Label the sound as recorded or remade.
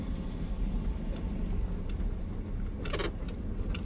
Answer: recorded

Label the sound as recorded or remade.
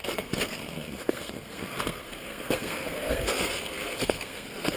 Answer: remade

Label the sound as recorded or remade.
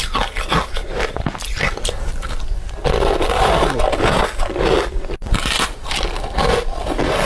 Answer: recorded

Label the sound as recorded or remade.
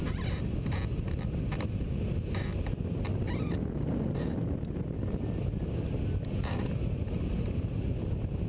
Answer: recorded